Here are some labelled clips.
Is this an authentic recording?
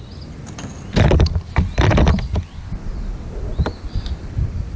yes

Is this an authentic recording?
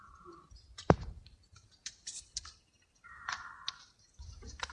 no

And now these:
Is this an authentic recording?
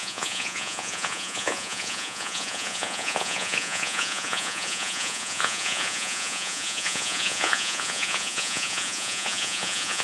no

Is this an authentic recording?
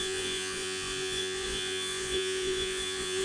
no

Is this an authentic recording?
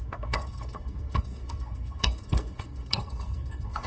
no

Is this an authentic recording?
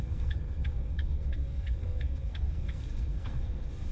no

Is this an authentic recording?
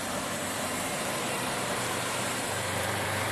no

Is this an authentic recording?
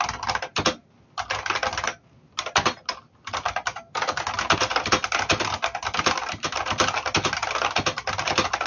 yes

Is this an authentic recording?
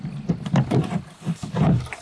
yes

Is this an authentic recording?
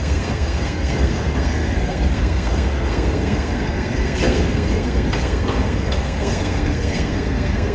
no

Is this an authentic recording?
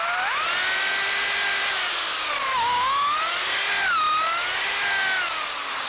yes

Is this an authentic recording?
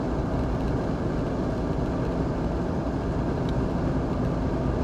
yes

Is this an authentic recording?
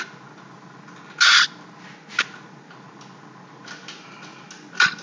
yes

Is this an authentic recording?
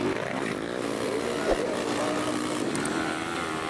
yes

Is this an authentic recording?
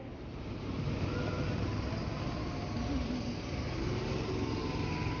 yes